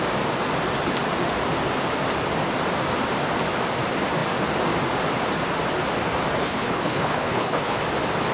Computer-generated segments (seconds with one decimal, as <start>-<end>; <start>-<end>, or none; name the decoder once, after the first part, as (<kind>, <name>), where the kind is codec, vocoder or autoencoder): 6.4-7.8 (codec, HILCodec)